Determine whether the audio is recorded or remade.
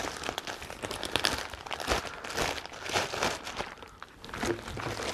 remade